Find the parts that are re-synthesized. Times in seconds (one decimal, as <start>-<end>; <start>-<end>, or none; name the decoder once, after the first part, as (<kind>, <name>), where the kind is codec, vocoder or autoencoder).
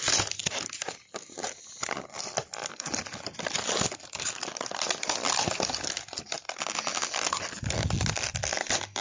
none